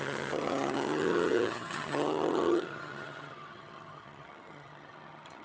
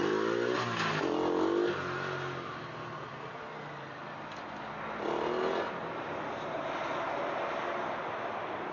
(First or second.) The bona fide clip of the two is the second